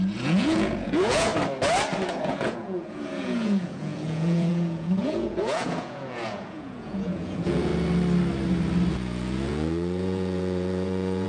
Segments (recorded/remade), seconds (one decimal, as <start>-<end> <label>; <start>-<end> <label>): 0.0-1.3 remade; 1.3-2.1 recorded; 2.1-7.7 remade; 7.7-8.9 recorded; 8.9-11.3 remade